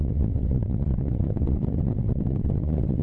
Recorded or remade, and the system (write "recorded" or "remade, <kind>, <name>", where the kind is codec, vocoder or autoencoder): remade, vocoder, WaveNeXt